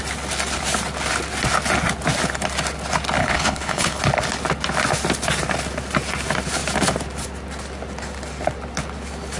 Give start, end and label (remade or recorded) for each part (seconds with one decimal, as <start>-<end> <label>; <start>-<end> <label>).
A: 0.0-3.2 recorded; 3.2-4.0 remade; 4.0-9.4 recorded